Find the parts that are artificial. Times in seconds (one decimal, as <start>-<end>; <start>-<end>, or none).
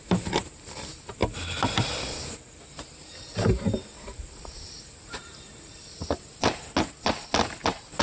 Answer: 0.0-1.2; 2.3-6.0